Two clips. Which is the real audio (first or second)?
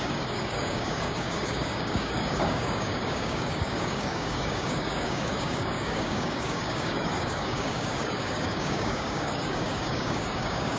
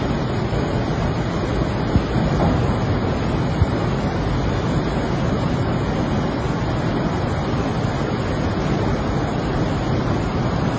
second